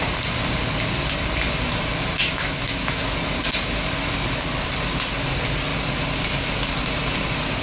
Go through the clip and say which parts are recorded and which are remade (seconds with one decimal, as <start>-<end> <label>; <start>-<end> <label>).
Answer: 0.0-2.2 recorded; 2.2-3.0 remade; 3.0-7.6 recorded